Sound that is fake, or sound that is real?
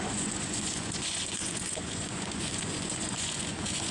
fake